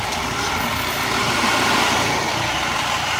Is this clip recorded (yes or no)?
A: yes